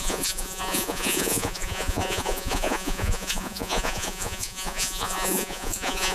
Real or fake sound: fake